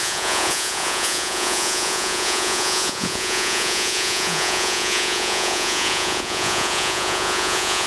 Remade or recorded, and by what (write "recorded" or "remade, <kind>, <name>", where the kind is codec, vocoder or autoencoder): remade, vocoder, Vocos